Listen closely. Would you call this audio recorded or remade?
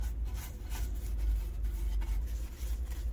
recorded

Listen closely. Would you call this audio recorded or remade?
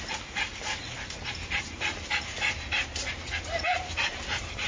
recorded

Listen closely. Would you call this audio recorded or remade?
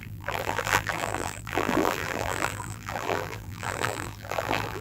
remade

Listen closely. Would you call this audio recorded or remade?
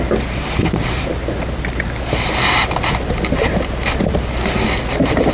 recorded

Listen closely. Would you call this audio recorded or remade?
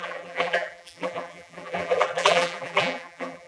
remade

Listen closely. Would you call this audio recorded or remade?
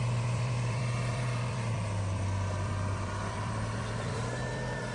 remade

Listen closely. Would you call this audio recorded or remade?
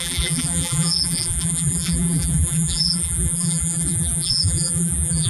remade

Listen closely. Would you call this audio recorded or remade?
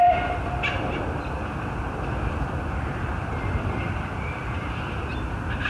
remade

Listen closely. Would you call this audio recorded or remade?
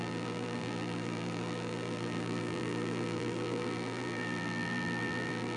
remade